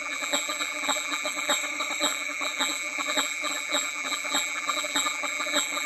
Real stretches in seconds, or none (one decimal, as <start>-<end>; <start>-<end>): 1.5-2.0